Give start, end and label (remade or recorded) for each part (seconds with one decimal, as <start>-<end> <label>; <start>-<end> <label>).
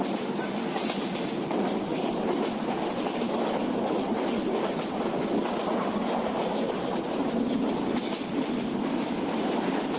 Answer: 0.0-1.9 recorded; 1.9-6.1 remade; 6.1-10.0 recorded